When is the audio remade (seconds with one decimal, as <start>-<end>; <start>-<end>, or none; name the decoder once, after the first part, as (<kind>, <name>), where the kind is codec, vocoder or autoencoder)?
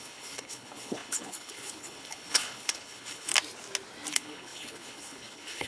0.0-3.3 (codec, HILCodec); 4.1-5.7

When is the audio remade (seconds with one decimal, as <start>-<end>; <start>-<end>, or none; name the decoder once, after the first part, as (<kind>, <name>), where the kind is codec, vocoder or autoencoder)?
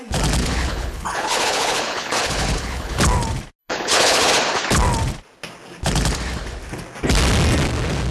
0.4-3.0 (codec, HILCodec); 3.6-4.3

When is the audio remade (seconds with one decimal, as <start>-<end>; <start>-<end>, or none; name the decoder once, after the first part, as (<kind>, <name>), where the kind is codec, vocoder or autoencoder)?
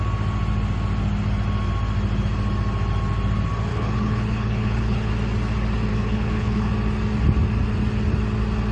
3.7-5.1 (codec, HILCodec); 5.9-6.7